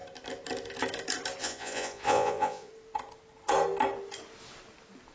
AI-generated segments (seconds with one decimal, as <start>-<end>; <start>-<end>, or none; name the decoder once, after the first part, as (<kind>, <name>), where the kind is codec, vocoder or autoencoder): 1.4-2.7 (vocoder, Vocos)